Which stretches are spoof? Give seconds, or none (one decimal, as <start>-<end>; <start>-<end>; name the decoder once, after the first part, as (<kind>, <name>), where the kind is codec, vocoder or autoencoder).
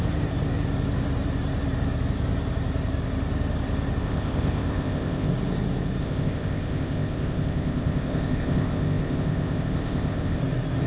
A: 4.0-5.3 (codec, ZipCodec); 6.0-10.4